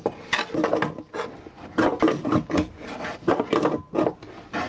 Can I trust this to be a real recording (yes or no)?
yes